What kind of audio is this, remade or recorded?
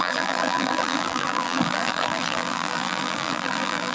remade